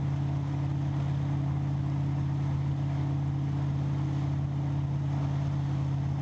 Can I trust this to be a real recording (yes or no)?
yes